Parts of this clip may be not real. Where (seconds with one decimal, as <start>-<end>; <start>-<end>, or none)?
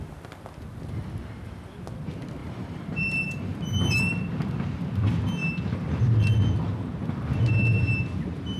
2.4-4.0